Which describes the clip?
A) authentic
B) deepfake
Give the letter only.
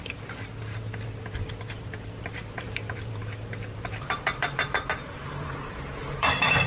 B